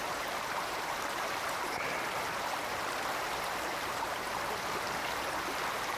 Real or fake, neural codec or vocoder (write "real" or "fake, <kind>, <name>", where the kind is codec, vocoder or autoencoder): real